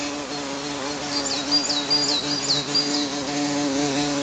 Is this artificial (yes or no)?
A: no